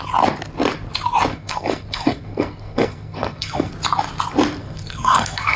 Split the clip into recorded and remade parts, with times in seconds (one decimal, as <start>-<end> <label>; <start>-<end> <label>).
0.0-1.3 recorded; 1.3-3.7 remade; 3.7-4.6 recorded; 4.6-5.6 remade